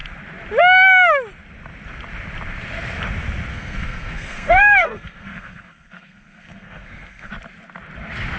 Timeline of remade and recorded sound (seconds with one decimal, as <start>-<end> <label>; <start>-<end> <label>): 0.0-3.5 recorded; 3.5-7.3 remade; 7.3-8.4 recorded